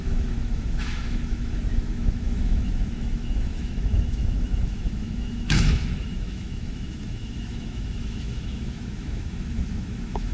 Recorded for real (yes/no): no